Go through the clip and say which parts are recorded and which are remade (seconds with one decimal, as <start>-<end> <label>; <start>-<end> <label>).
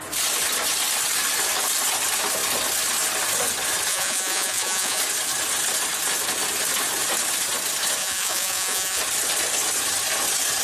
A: 0.0-3.9 recorded; 3.9-5.0 remade; 5.0-8.0 recorded; 8.0-9.0 remade; 9.0-10.6 recorded